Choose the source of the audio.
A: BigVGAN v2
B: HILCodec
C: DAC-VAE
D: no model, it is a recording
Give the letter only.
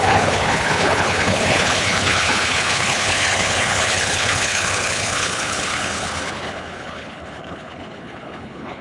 B